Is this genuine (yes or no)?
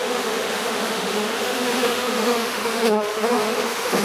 no